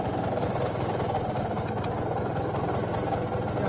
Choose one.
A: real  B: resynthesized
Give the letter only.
A